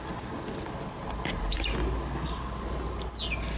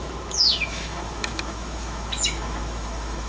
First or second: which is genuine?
first